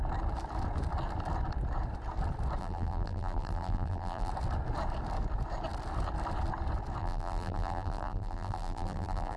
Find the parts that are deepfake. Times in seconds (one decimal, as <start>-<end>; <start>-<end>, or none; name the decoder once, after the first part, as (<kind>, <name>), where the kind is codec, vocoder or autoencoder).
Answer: 2.6-4.3 (vocoder, BigVGAN v2); 7.0-9.4

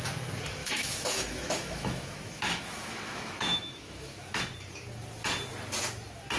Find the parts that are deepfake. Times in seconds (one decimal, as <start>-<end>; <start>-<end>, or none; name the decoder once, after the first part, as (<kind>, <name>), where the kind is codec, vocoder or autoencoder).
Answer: 0.6-4.4 (autoencoder, DAC-VAE)

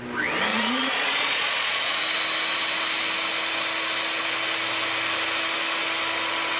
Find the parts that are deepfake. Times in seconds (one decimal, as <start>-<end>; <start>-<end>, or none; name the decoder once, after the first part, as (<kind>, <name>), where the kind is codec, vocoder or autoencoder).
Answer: 0.5-2.0 (vocoder, Vocos)

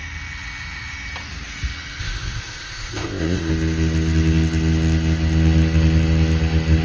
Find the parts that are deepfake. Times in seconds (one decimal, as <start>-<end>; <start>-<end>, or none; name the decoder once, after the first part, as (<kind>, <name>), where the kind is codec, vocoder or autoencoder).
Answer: 2.0-3.5 (codec, ZipCodec)

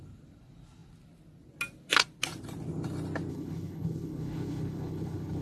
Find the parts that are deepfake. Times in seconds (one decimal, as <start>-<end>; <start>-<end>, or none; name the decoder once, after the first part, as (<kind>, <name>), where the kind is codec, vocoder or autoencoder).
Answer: 3.3-5.4 (codec, HILCodec)